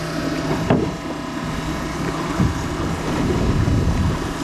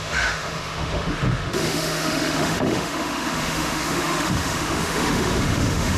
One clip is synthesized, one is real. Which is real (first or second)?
first